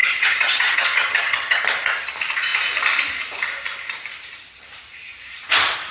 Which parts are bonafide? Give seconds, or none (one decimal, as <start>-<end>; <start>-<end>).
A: 1.6-5.9